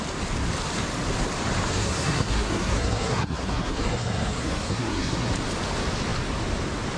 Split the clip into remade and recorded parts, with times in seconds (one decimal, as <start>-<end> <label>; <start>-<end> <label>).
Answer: 0.0-1.7 recorded; 1.7-5.3 remade; 5.3-7.0 recorded